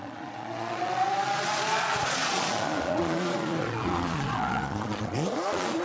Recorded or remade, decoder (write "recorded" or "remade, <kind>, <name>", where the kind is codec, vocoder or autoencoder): remade, vocoder, Vocos